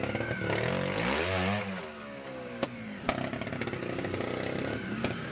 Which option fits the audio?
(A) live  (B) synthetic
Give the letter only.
A